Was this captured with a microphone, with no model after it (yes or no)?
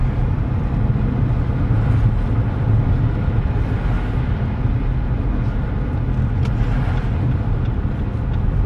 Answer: yes